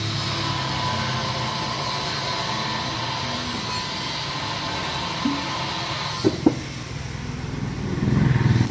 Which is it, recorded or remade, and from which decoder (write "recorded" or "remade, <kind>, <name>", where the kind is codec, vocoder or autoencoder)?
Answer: recorded